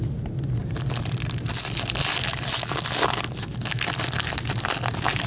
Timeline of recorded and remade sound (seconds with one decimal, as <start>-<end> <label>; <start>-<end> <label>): 0.0-5.3 recorded